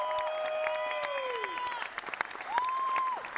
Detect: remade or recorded recorded